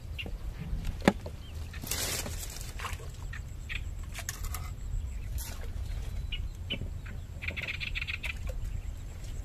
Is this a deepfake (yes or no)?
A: no